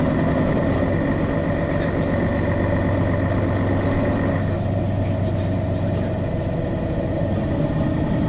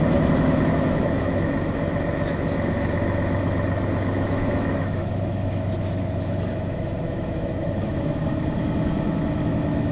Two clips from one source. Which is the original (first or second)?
first